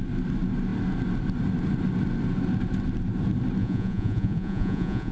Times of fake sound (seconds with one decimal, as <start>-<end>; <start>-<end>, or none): 3.6-5.1